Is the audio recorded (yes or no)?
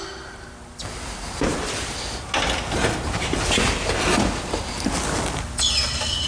yes